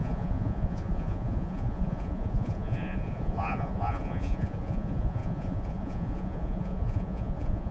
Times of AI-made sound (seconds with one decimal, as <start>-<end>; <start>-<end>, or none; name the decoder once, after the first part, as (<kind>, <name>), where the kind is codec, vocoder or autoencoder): 0.0-7.7 (vocoder, Vocos)